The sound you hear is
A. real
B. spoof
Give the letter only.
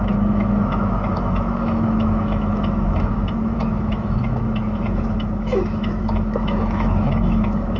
B